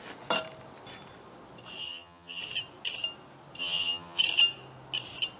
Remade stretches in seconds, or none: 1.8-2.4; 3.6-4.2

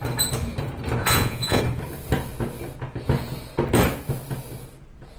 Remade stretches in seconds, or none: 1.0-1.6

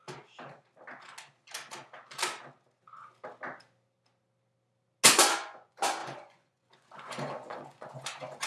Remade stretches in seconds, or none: 5.1-8.5

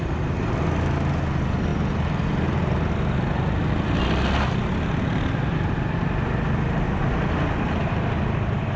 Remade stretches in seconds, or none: none

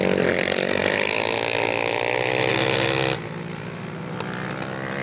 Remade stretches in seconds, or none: none

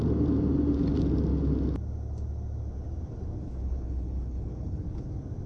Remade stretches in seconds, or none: 3.4-5.1